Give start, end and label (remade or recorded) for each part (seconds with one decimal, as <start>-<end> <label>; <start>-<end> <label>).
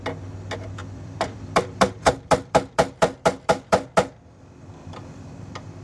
0.0-0.8 recorded; 0.8-4.3 remade; 4.3-4.8 recorded; 4.8-5.3 remade; 5.3-5.8 recorded